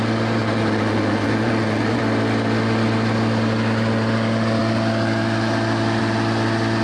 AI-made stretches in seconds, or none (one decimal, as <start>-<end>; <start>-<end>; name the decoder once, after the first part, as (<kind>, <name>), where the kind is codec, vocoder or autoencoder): 0.4-2.0 (vocoder, Vocos)